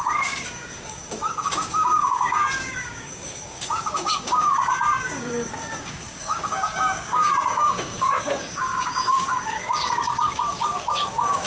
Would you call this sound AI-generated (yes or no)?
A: yes